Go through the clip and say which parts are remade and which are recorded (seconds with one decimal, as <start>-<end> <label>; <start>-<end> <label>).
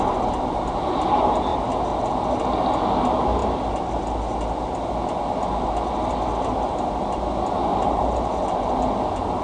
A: 0.0-7.7 recorded; 7.7-8.4 remade; 8.4-9.4 recorded